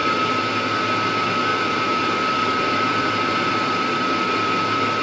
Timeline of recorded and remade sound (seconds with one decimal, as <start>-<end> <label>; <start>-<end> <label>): 0.0-1.5 recorded; 1.5-4.5 remade; 4.5-5.0 recorded